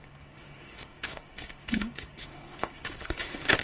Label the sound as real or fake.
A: fake